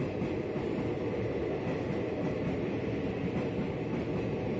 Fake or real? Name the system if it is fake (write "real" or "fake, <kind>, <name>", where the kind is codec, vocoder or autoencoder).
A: real